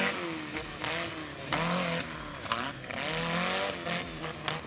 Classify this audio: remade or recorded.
recorded